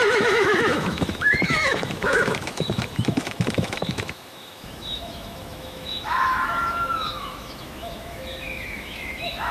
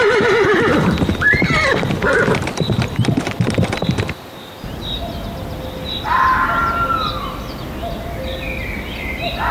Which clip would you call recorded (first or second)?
second